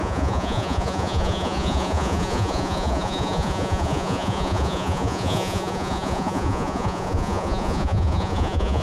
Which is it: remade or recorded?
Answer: remade